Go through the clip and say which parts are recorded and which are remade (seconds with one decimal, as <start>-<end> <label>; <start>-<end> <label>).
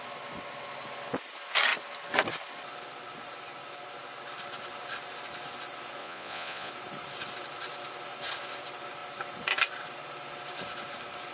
0.0-6.0 recorded; 6.0-6.7 remade; 6.7-11.3 recorded